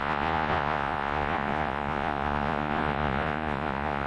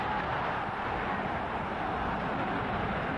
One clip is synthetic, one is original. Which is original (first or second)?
second